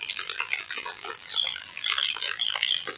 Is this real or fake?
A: fake